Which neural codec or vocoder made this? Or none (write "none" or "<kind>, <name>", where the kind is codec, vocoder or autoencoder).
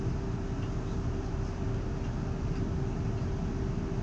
none